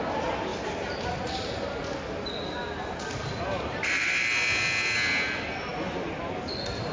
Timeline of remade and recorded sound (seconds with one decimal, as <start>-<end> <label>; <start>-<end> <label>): 0.0-0.5 recorded; 0.5-1.2 remade; 1.2-2.6 recorded; 2.6-3.3 remade; 3.3-5.7 recorded; 5.7-6.2 remade; 6.2-6.9 recorded